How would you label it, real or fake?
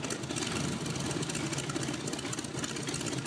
real